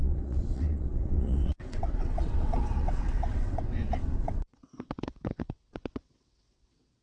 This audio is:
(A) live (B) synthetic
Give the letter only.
B